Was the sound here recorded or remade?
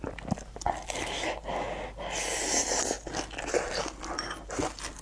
recorded